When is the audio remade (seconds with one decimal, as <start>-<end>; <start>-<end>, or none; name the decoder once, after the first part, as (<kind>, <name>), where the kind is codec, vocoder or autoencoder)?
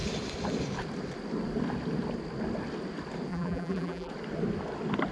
3.3-4.1 (vocoder, BigVGAN v2)